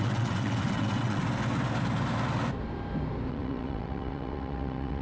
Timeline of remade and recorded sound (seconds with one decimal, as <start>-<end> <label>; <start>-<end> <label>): 0.0-1.2 remade; 1.2-3.3 recorded; 3.3-5.0 remade